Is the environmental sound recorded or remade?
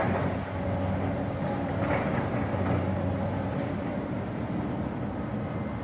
recorded